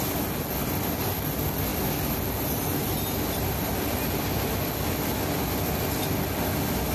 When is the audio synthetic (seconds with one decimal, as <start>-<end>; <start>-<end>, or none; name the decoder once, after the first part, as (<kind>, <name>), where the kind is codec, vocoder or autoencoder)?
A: none

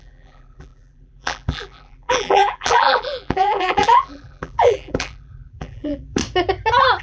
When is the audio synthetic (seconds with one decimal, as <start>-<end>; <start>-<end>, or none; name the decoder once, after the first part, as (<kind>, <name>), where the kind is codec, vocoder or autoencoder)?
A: 0.0-6.2 (vocoder, BigVGAN v2)

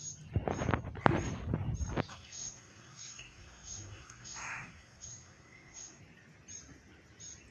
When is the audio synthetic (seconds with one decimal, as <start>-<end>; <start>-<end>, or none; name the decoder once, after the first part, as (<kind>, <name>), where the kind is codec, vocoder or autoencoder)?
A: 2.1-6.0 (codec, SNAC)

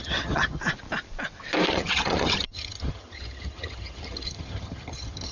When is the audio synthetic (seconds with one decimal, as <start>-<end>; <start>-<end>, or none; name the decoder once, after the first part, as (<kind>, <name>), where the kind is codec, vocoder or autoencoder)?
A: 0.0-0.6 (vocoder, HiFi-GAN); 1.7-5.3

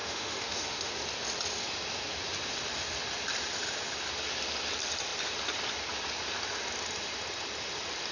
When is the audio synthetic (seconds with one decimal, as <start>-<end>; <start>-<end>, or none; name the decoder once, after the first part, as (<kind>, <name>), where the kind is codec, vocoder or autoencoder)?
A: 0.0-0.9 (autoencoder, DAC-VAE)

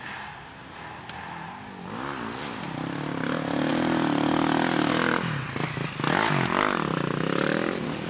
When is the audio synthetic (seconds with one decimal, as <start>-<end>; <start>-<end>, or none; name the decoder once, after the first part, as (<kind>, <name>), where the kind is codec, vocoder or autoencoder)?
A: none

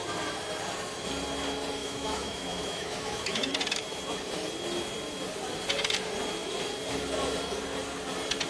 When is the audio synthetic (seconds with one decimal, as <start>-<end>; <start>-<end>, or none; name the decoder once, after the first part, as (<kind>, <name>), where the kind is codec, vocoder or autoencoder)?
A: 1.8-3.5 (autoencoder, DAC-VAE)